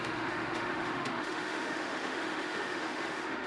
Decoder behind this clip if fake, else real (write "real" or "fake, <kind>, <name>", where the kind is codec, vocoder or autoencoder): fake, autoencoder, DAC-VAE